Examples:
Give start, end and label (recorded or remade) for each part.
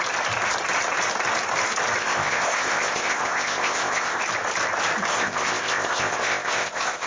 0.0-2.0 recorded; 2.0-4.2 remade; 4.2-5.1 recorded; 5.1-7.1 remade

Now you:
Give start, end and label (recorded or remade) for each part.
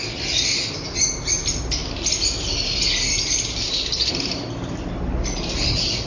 0.0-6.1 recorded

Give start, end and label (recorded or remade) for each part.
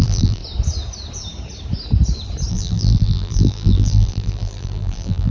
0.0-0.4 remade; 0.4-2.5 recorded; 2.5-5.3 remade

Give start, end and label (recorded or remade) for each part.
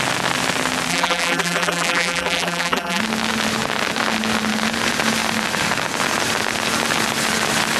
0.0-0.9 recorded; 0.9-3.0 remade; 3.0-7.8 recorded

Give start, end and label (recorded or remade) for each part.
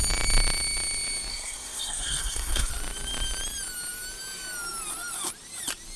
0.0-1.3 recorded; 1.3-2.7 remade; 2.7-6.0 recorded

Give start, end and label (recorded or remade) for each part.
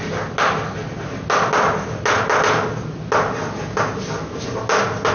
0.0-5.1 recorded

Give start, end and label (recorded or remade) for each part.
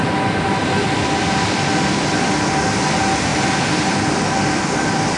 0.0-5.2 recorded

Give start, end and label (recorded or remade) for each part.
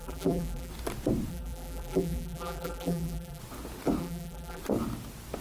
0.0-0.7 remade; 0.7-1.3 recorded; 1.3-3.4 remade; 3.4-4.0 recorded; 4.0-4.6 remade; 4.6-5.4 recorded